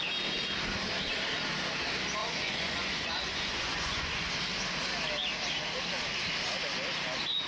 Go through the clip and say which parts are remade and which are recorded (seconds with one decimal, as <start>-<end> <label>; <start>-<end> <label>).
0.0-2.2 recorded; 2.2-4.3 remade; 4.3-7.5 recorded